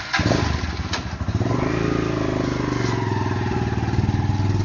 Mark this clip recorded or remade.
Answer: recorded